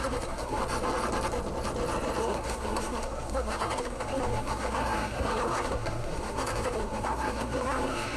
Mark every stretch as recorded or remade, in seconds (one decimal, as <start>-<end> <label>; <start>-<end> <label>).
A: 0.0-0.6 remade; 0.6-2.2 recorded; 2.2-8.2 remade